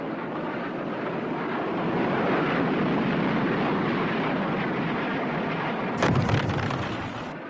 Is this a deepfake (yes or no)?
yes